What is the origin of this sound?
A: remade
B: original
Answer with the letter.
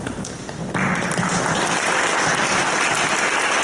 B